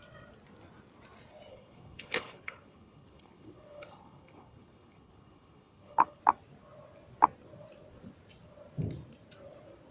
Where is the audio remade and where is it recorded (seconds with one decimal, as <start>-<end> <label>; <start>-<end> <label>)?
0.0-1.5 recorded; 1.5-6.2 remade; 6.2-9.9 recorded